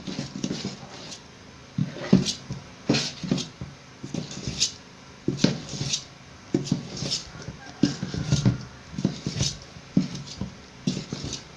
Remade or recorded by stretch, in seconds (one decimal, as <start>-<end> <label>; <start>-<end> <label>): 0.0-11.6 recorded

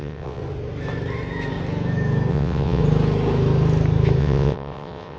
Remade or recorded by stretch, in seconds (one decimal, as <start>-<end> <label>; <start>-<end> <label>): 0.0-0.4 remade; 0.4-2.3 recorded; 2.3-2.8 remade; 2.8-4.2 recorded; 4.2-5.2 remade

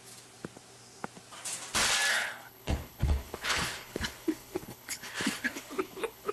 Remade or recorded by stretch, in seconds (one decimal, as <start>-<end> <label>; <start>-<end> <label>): 0.0-2.1 recorded; 2.1-6.3 remade

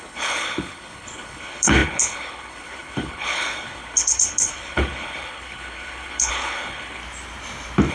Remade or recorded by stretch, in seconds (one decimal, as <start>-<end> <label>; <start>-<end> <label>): 0.0-7.0 remade; 7.0-7.9 recorded

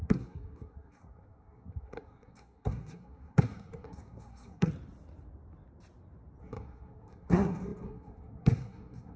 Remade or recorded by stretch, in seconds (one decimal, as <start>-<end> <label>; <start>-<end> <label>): 0.0-4.7 remade; 4.7-6.4 recorded; 6.4-9.2 remade

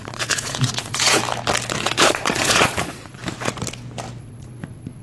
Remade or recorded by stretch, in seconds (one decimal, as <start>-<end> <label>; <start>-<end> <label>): 0.0-1.2 remade; 1.2-1.8 recorded; 1.8-3.2 remade; 3.2-4.2 recorded; 4.2-5.0 remade

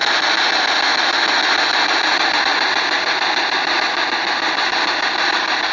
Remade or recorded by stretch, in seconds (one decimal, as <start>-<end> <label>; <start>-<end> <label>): 0.0-5.7 recorded

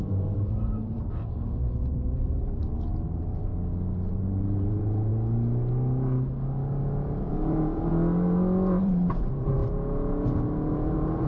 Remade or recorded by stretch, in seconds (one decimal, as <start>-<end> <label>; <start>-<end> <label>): 0.0-3.5 remade; 3.5-4.1 recorded; 4.1-5.1 remade; 5.1-7.3 recorded; 7.3-7.9 remade; 7.9-8.8 recorded; 8.8-9.6 remade; 9.6-10.7 recorded; 10.7-11.3 remade